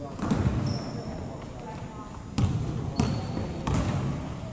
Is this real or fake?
real